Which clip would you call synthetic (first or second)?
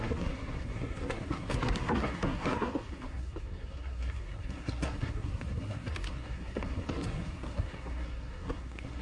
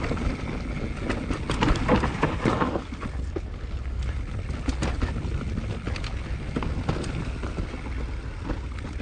first